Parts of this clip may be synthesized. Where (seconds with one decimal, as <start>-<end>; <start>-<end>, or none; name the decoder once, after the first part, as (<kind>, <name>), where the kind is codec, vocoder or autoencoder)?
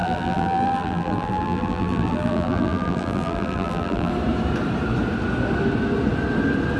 0.0-4.1 (vocoder, BigVGAN v2)